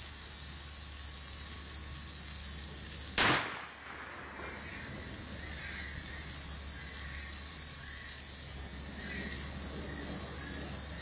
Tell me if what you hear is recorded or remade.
recorded